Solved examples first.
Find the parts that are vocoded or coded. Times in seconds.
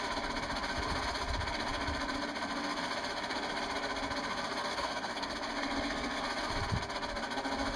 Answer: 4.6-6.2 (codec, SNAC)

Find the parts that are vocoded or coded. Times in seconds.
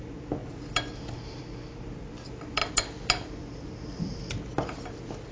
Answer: none